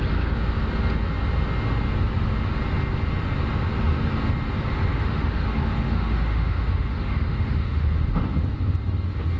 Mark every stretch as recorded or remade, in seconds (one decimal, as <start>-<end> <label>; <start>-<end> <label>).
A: 0.0-4.9 recorded; 4.9-7.9 remade; 7.9-9.4 recorded